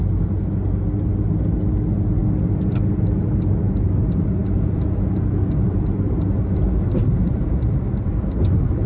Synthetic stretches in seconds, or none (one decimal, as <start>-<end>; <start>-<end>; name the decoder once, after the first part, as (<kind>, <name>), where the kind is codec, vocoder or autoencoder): 7.0-8.1 (vocoder, BigVGAN v2)